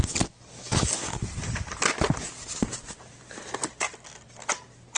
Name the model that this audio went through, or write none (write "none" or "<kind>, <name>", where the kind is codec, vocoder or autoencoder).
none